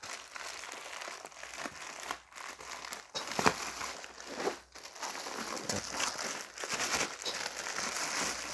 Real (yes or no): yes